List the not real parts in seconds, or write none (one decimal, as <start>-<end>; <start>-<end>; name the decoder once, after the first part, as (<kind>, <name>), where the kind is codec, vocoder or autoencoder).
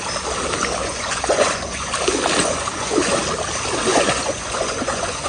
0.8-1.9 (vocoder, Vocos); 2.4-3.2; 3.9-5.3